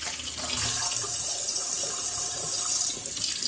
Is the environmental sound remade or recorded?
recorded